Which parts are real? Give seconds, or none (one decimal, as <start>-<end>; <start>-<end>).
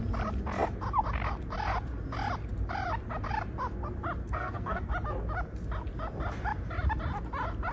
0.0-4.2; 4.9-7.7